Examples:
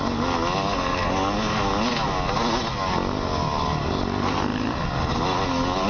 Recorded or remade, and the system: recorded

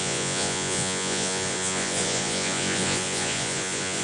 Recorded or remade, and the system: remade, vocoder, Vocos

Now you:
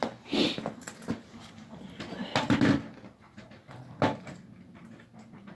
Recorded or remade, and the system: recorded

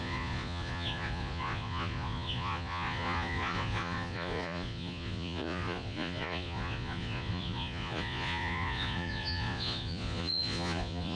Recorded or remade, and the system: remade, vocoder, Vocos